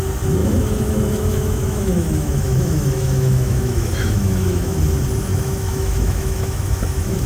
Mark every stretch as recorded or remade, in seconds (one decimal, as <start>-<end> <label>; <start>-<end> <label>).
0.0-0.4 recorded; 0.4-4.8 remade; 4.8-5.3 recorded; 5.3-7.3 remade